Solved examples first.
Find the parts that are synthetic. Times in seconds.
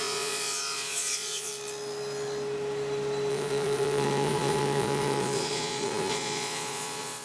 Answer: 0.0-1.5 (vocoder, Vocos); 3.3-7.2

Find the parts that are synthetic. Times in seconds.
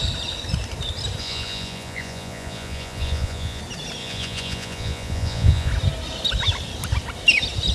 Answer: 1.2-3.6 (vocoder, Vocos); 4.0-5.7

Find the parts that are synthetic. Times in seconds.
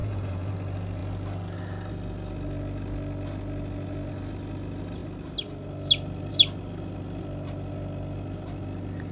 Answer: 0.0-0.5 (vocoder, Vocos)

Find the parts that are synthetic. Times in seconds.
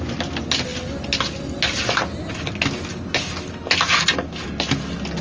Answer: none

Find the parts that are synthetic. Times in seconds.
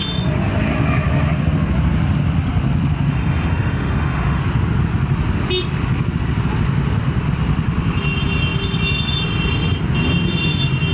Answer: 3.1-4.4 (autoencoder, DAC-VAE)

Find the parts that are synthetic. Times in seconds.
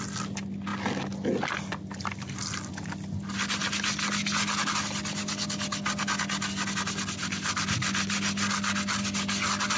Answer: none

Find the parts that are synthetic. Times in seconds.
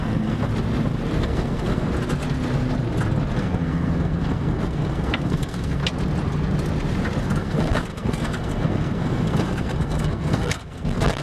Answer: 0.0-0.5 (codec, SNAC); 1.2-1.9; 3.4-5.8; 7.2-11.2